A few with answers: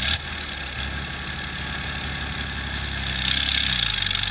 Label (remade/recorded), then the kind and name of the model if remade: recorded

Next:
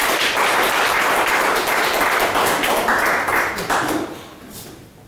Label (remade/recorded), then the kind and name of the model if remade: recorded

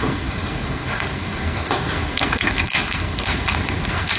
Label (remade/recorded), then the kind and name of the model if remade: remade, codec, SNAC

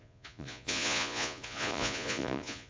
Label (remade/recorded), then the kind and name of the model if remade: remade, vocoder, Vocos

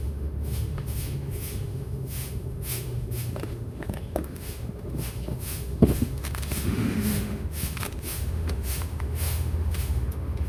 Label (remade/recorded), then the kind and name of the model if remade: remade, autoencoder, DAC-VAE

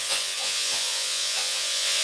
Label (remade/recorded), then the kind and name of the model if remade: remade, vocoder, Vocos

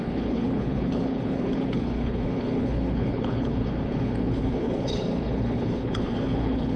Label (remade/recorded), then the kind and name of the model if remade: remade, codec, HILCodec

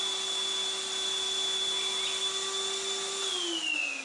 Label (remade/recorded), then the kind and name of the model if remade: recorded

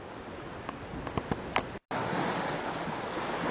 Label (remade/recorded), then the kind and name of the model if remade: recorded